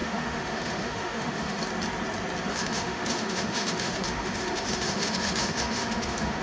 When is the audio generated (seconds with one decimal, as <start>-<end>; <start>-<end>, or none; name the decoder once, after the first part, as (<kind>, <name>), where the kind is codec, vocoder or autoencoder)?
0.0-1.6 (autoencoder, DAC-VAE); 2.5-6.4